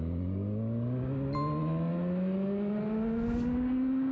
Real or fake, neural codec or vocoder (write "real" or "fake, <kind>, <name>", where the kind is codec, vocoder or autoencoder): real